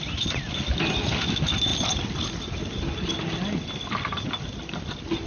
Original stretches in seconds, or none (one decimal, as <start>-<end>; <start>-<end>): 0.0-5.3